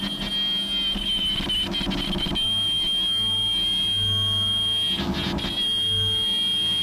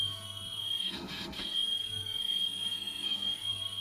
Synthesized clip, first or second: second